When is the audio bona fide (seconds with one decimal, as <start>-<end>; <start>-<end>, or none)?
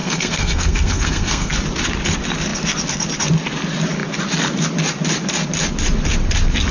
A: 1.5-6.7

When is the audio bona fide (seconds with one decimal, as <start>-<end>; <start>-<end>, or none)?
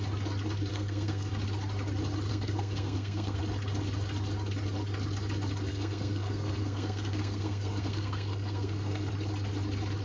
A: 0.0-0.7; 1.3-2.3; 3.4-5.7; 9.1-10.0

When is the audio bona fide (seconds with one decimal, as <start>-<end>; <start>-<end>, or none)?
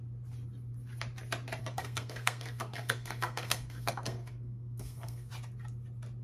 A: 0.0-1.6; 5.3-6.2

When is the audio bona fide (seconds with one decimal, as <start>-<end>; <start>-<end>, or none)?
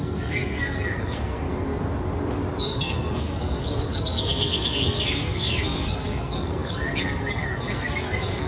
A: 1.7-2.6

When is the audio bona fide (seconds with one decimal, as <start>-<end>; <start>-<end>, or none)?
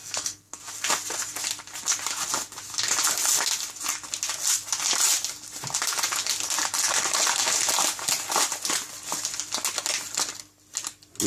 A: 0.6-11.3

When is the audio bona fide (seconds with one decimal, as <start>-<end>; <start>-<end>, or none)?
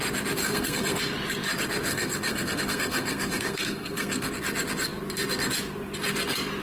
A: 0.0-0.4; 1.0-1.9; 4.3-6.6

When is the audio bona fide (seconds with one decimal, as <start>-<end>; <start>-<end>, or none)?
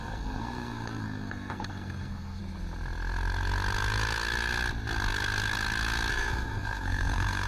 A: 2.4-6.1